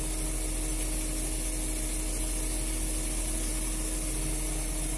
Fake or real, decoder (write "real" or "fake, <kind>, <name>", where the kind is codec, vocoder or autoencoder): real